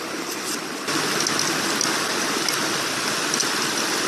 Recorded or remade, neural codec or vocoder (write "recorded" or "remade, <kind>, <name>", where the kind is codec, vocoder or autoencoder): recorded